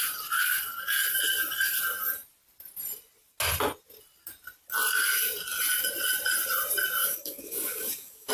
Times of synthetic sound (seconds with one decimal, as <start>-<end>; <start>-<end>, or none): 7.0-8.3